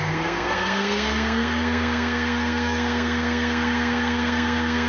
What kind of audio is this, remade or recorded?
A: remade